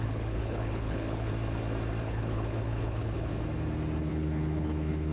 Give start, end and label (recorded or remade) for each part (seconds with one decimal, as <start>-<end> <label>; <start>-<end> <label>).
0.0-1.3 remade; 1.3-2.0 recorded; 2.0-3.3 remade; 3.3-4.1 recorded; 4.1-5.1 remade